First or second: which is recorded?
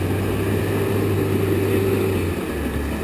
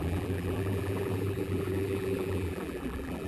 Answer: first